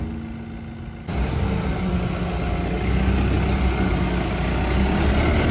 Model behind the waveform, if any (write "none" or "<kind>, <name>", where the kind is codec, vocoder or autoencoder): none